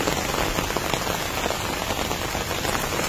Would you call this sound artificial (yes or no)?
no